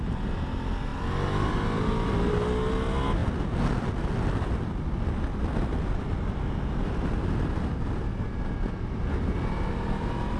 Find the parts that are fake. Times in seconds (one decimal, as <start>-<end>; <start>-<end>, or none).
none

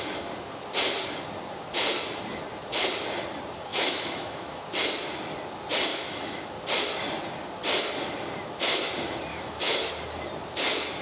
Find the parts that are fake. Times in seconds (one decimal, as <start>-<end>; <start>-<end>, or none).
3.7-4.6; 5.9-6.5; 9.3-9.9

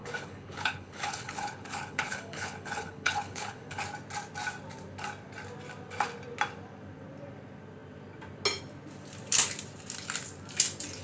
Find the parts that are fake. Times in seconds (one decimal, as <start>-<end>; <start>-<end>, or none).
0.0-3.8

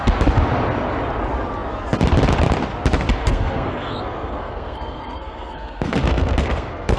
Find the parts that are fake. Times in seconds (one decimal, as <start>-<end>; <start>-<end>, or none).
3.2-7.0

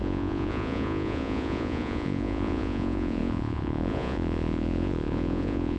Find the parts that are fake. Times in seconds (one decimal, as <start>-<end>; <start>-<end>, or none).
0.0-5.8

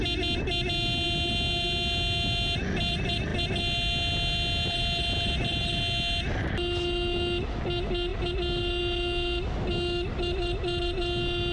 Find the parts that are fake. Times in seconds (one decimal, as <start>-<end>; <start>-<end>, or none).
none

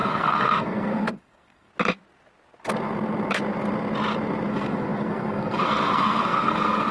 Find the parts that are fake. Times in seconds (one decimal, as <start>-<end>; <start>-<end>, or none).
0.0-1.7; 4.5-6.9

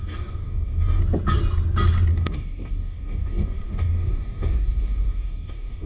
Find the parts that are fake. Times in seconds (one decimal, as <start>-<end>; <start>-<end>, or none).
0.0-1.0; 2.1-5.9